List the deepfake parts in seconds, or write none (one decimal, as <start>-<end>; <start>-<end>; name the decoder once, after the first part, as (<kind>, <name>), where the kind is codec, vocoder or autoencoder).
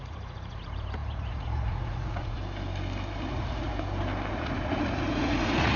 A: 0.0-2.4 (vocoder, Vocos); 3.3-3.7; 4.3-5.8